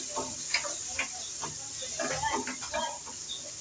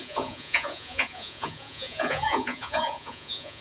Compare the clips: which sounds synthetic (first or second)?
second